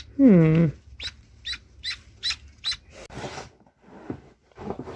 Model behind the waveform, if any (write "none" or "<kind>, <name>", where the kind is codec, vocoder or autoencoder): none